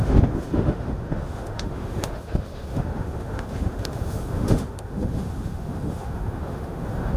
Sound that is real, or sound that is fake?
fake